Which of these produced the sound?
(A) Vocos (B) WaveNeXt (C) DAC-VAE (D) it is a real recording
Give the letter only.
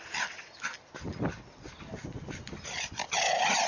D